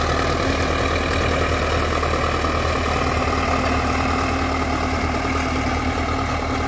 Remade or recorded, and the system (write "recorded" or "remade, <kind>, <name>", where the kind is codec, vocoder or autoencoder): recorded